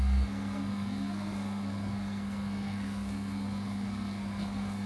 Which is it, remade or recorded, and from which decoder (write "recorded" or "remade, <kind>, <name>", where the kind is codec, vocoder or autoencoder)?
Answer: remade, codec, SNAC